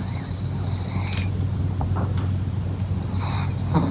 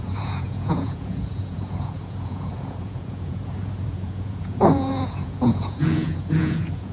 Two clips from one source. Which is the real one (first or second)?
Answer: first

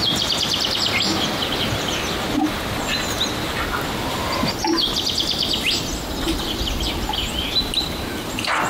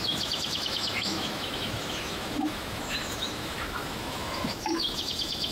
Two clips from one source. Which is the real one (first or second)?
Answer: first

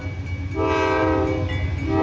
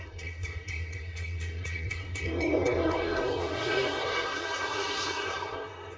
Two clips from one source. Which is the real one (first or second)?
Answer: first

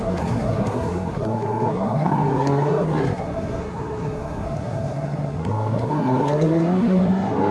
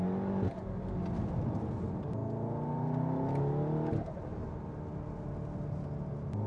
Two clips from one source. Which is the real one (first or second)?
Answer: second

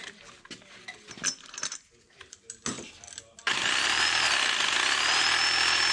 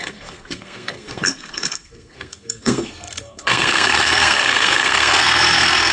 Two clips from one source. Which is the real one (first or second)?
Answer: first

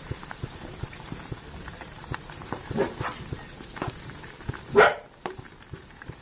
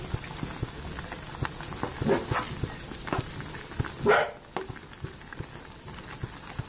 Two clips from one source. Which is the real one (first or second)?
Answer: second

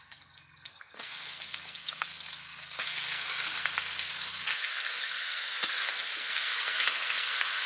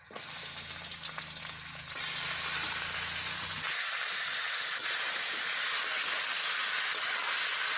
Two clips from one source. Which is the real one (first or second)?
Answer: second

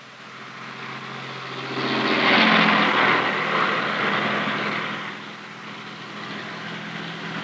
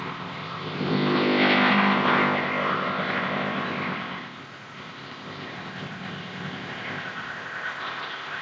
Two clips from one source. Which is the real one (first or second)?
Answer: first